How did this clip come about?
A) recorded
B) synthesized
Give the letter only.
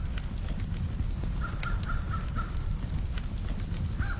A